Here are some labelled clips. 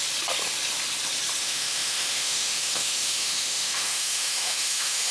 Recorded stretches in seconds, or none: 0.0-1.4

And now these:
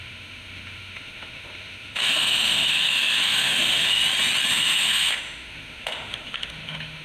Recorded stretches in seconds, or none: 4.0-4.5

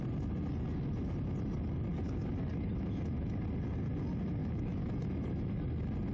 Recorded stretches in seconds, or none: 0.0-4.4; 5.6-6.1

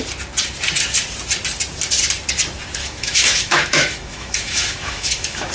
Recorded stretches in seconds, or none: 0.0-2.8

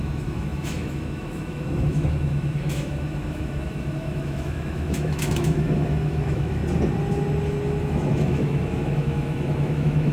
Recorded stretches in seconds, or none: 6.6-7.8

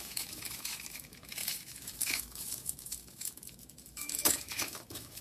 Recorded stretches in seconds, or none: none

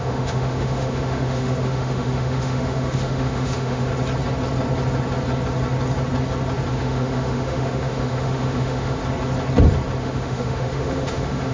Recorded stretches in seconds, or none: 3.9-6.7; 9.0-10.0